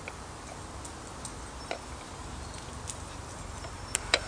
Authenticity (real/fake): real